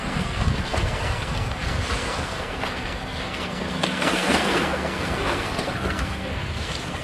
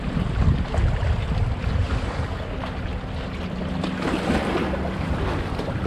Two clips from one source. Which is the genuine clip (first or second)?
second